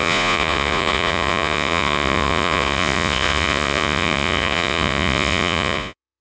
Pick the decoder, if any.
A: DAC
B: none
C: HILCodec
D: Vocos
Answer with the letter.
D